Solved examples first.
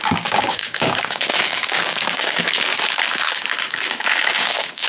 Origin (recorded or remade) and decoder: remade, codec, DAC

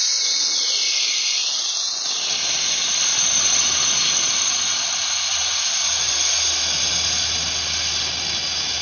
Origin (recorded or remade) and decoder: recorded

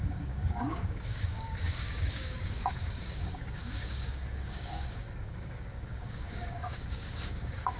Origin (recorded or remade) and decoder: remade, codec, DAC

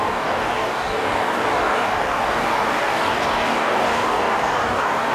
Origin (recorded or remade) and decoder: remade, codec, DAC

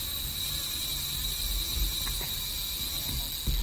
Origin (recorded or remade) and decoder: recorded